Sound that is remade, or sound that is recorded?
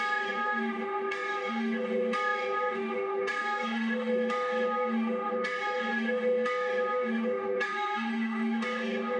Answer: remade